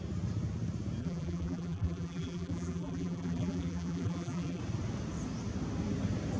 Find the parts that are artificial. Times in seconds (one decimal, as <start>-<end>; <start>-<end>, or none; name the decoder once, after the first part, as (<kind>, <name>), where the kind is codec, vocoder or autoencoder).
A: 1.0-4.6 (vocoder, BigVGAN v2)